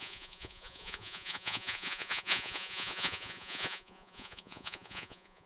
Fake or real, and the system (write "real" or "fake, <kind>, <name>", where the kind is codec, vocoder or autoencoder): fake, vocoder, Vocos